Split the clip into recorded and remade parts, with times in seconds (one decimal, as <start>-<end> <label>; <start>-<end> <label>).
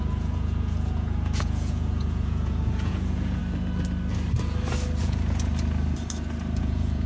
0.0-3.4 remade; 3.4-5.0 recorded; 5.0-5.5 remade; 5.5-6.6 recorded; 6.6-7.1 remade